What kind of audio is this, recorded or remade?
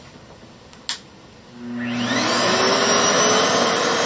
recorded